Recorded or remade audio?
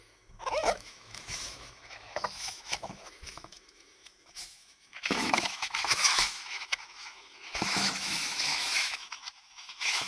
remade